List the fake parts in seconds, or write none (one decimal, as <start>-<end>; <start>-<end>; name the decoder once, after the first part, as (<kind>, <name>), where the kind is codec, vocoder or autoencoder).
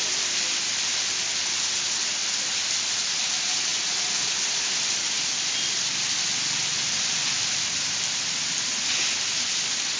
none